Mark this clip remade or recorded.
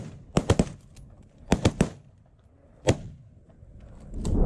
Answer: recorded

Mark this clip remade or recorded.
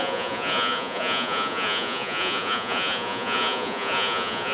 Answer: remade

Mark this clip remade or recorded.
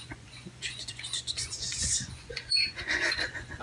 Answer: remade